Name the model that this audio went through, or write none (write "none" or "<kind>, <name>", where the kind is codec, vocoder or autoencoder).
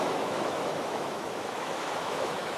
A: autoencoder, DAC-VAE